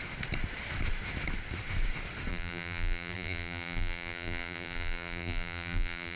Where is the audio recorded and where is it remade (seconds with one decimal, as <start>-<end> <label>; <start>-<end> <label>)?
0.0-2.3 recorded; 2.3-6.2 remade